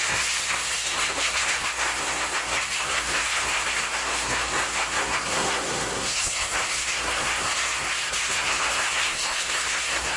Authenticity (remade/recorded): remade